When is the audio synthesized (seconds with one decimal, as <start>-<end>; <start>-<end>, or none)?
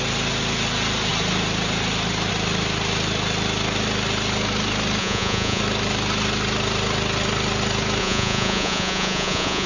5.0-5.6; 8.0-9.7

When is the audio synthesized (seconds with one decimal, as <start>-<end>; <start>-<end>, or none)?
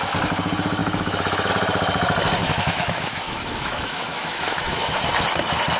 0.8-1.5; 2.4-4.9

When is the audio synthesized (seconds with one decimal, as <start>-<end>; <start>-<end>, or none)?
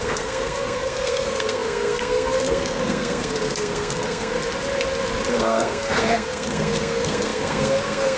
0.0-4.4; 5.3-8.2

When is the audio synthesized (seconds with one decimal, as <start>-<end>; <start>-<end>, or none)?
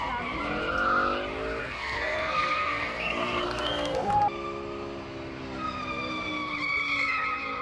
1.6-4.2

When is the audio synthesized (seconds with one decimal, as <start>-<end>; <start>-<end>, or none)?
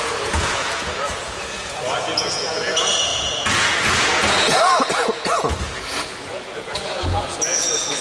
0.0-8.0